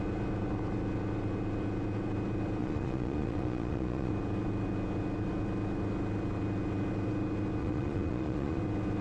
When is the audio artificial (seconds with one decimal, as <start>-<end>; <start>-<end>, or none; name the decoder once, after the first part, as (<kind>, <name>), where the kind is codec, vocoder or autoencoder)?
2.6-4.1 (vocoder, Vocos); 7.6-8.6